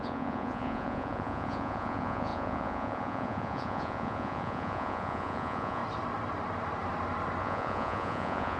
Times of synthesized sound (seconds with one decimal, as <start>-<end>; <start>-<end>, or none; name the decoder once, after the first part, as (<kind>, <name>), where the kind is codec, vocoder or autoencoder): 0.0-5.8 (vocoder, Vocos); 7.4-8.6